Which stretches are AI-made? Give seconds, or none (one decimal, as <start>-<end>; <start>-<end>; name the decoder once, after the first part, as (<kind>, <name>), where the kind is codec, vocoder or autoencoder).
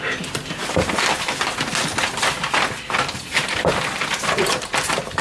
none